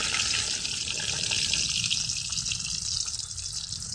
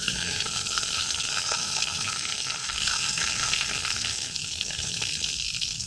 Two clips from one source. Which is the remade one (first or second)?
second